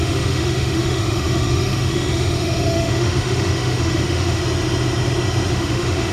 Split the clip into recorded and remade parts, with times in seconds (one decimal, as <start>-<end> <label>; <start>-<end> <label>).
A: 0.0-4.4 remade; 4.4-5.5 recorded; 5.5-6.1 remade

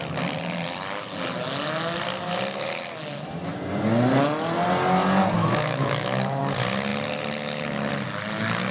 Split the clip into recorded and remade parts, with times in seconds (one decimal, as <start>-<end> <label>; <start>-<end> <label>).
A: 0.0-5.4 recorded; 5.4-6.4 remade; 6.4-8.7 recorded

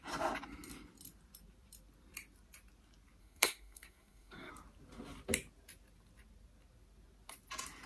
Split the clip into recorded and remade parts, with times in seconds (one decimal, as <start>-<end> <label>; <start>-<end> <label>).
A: 0.0-3.2 recorded; 3.2-4.5 remade; 4.5-7.9 recorded

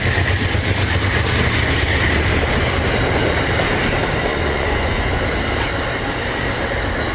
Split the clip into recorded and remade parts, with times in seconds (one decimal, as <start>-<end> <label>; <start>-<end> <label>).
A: 0.0-4.3 recorded; 4.3-5.2 remade; 5.2-7.1 recorded

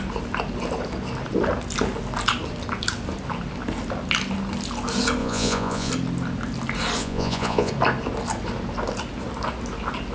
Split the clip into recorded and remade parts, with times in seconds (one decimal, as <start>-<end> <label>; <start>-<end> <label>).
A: 0.0-5.2 recorded; 5.2-5.9 remade; 5.9-7.0 recorded; 7.0-7.7 remade; 7.7-10.1 recorded

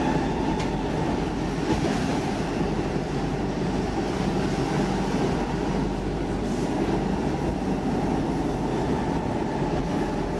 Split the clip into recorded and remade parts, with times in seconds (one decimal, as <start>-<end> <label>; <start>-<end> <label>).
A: 0.0-2.1 recorded; 2.1-4.3 remade; 4.3-9.0 recorded; 9.0-9.7 remade; 9.7-10.4 recorded

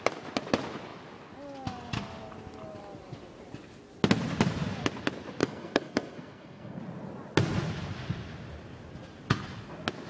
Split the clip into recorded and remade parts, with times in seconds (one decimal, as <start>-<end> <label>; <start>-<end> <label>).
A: 0.0-5.4 recorded; 5.4-6.8 remade; 6.8-10.1 recorded